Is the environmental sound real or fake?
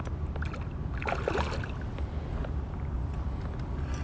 real